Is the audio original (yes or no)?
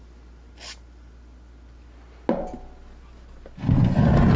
yes